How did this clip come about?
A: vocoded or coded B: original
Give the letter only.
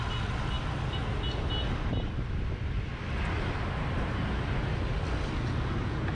B